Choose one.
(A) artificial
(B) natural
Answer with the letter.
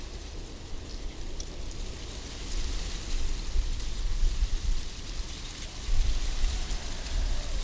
B